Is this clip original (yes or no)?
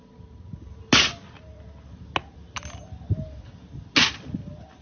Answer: yes